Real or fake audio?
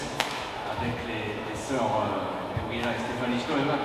fake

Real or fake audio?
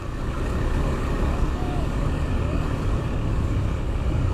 fake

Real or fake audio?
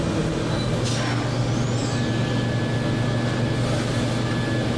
real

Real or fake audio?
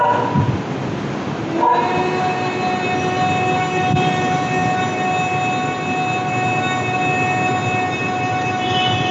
real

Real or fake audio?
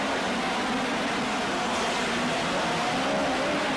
real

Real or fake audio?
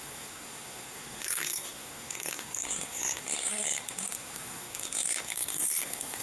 fake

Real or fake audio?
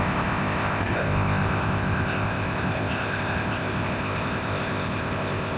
fake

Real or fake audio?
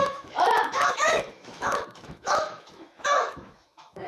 fake